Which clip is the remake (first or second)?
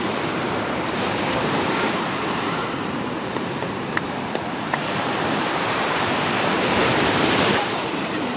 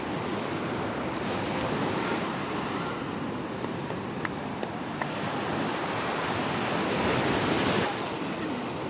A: first